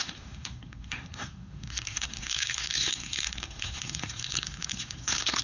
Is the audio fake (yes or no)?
yes